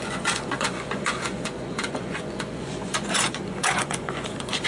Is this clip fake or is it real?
fake